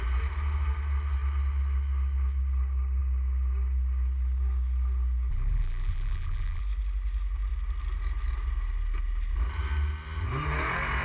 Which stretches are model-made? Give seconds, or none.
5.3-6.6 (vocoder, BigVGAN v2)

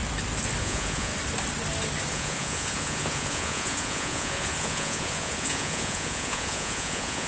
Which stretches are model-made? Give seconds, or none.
0.6-1.1 (vocoder, Vocos); 2.1-7.3

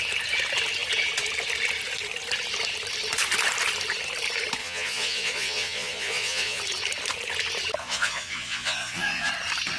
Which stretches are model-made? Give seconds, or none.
4.6-6.6 (vocoder, Vocos); 7.8-9.3

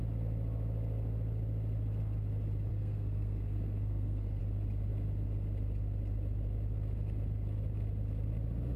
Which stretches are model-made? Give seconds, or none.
2.7-4.4 (codec, SNAC)

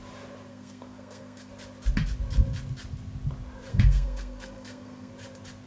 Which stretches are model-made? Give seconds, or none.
0.5-1.5 (codec, SNAC); 3.7-5.1

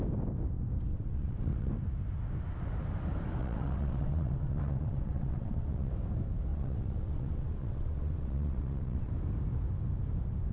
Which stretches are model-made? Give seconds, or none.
0.9-1.7 (vocoder, WaveNeXt); 3.4-5.9; 6.5-9.1

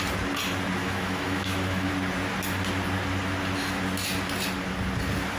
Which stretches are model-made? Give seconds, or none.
0.8-1.9 (autoencoder, DAC-VAE)